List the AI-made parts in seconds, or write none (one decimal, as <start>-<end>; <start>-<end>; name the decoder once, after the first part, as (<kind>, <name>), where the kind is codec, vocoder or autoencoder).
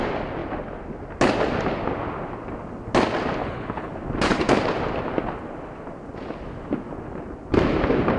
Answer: 3.4-3.9 (codec, HILCodec)